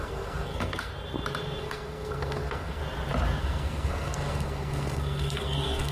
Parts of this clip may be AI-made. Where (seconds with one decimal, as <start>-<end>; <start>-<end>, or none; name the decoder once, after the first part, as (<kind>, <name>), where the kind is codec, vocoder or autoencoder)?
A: 0.0-0.9 (codec, SNAC); 1.6-2.8; 3.4-5.9